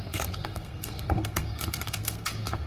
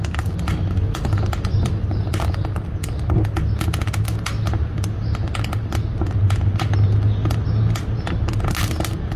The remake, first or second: first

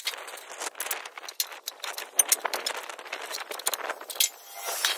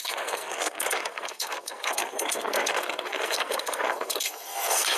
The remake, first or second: second